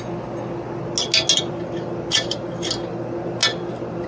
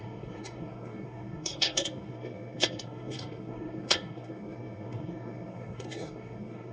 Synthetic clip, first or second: second